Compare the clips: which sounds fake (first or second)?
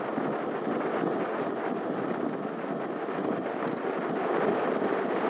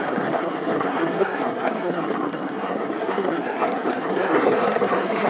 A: second